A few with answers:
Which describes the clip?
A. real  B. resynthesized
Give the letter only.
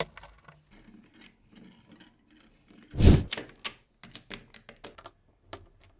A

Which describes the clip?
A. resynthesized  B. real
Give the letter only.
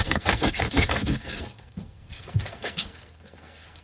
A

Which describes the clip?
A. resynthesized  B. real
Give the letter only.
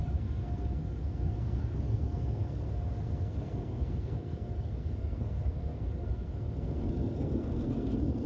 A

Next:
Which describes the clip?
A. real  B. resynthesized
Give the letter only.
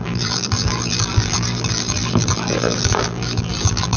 B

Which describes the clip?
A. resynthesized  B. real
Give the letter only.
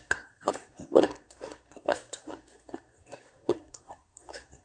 A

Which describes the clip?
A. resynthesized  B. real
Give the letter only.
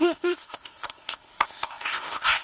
A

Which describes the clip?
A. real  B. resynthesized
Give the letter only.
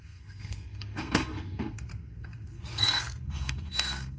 B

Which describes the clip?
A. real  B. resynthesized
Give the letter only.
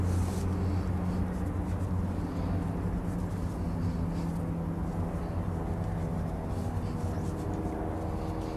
A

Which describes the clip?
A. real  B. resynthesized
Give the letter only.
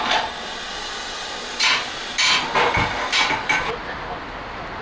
A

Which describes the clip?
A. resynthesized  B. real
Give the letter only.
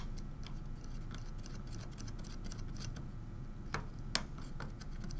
B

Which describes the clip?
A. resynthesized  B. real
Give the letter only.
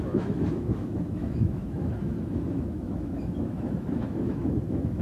A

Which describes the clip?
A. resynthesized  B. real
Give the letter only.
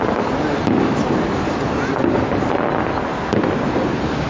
B